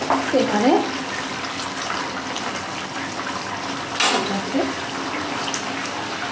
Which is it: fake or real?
real